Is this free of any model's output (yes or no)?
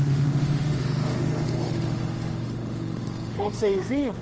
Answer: no